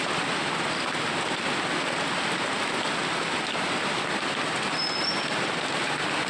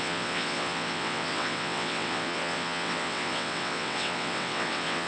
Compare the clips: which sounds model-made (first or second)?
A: second